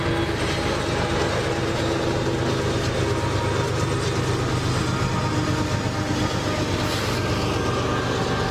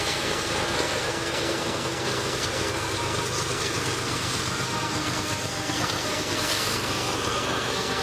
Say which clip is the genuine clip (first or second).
first